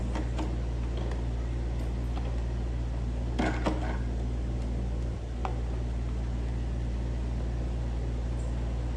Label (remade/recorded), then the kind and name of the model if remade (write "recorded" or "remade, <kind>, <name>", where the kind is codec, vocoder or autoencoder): recorded